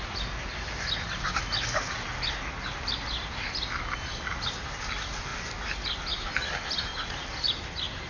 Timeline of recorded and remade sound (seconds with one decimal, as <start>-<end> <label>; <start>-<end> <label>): 0.0-8.1 recorded